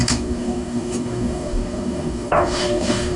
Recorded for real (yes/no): no